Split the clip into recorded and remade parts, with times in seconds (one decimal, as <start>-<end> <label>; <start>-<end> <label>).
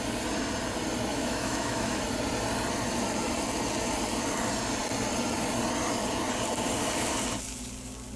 0.0-1.1 recorded; 1.1-2.0 remade; 2.0-8.2 recorded